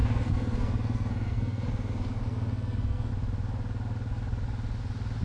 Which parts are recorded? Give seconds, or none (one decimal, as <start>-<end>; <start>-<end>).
3.1-5.2

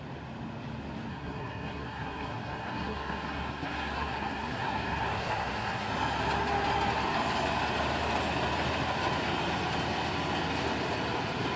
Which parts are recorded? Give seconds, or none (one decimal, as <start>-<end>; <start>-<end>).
0.0-1.1; 5.9-11.6

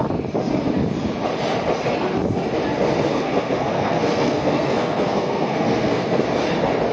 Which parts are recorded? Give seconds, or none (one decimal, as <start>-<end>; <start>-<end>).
0.0-3.1; 6.2-6.9

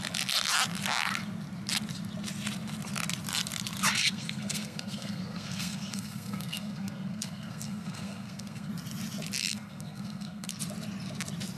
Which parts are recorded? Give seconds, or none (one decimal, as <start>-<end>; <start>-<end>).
0.0-4.0; 8.7-9.4; 10.6-11.6